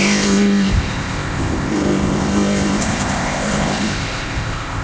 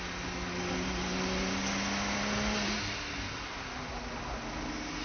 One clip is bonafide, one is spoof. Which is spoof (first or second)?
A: first